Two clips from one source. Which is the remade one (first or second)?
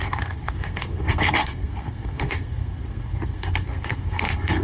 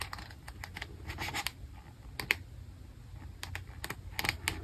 first